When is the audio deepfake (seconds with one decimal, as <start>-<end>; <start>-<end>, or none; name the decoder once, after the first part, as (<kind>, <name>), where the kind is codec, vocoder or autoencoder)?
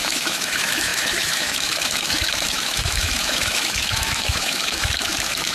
0.0-5.5 (autoencoder, DAC-VAE)